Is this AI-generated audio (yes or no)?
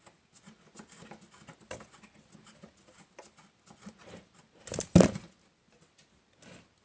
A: no